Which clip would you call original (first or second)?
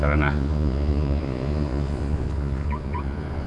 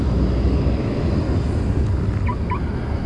second